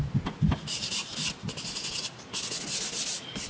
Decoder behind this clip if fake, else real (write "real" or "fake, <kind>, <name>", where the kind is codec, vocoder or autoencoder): real